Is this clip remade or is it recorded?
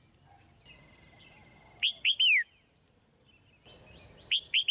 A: recorded